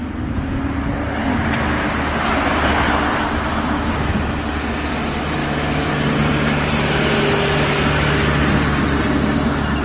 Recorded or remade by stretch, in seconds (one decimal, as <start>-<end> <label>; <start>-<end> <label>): 0.0-5.4 recorded; 5.4-5.9 remade; 5.9-9.8 recorded